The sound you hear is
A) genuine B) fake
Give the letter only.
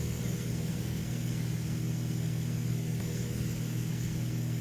B